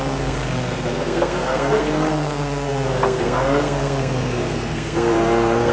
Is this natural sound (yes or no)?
no